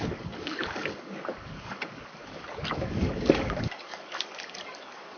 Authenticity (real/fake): fake